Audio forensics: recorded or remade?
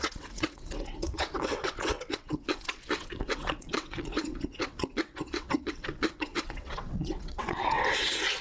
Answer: remade